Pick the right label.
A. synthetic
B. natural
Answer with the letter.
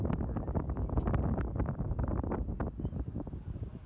B